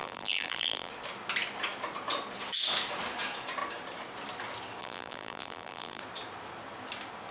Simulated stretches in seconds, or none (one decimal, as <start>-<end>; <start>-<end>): 0.0-0.9; 4.8-6.0